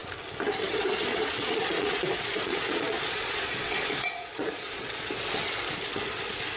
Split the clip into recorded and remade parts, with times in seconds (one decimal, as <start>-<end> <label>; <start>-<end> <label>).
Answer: 0.0-1.1 recorded; 1.1-5.1 remade; 5.1-6.6 recorded